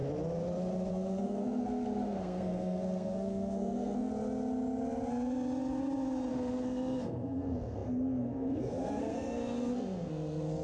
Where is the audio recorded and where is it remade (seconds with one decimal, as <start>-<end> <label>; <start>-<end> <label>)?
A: 0.0-0.9 recorded; 0.9-4.1 remade; 4.1-6.3 recorded; 6.3-10.6 remade